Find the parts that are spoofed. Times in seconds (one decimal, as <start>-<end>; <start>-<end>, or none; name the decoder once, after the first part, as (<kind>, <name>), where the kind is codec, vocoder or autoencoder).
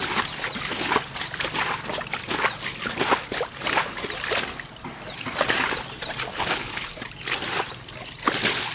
6.3-6.9 (codec, HILCodec)